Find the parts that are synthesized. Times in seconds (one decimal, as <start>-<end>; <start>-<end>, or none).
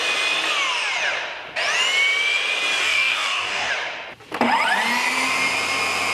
2.8-3.7